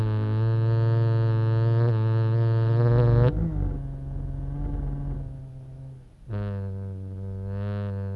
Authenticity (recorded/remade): recorded